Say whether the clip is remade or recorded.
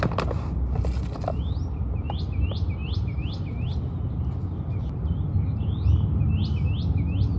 recorded